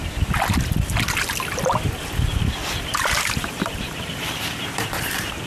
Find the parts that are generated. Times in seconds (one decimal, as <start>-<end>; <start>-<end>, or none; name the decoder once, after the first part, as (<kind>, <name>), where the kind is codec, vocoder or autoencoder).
2.6-5.0 (vocoder, BigVGAN v2)